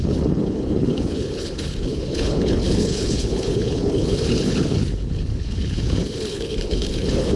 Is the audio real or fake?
fake